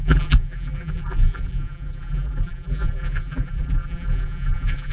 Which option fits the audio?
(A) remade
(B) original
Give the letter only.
A